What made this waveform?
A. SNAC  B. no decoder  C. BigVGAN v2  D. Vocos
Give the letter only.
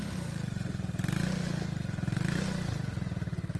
B